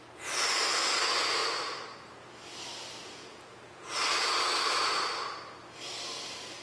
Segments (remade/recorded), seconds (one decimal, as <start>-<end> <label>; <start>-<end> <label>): 0.0-3.0 recorded; 3.0-3.9 remade; 3.9-6.6 recorded